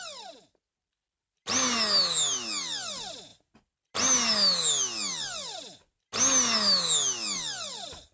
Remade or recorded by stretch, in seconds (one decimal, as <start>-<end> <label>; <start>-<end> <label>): 0.0-8.1 recorded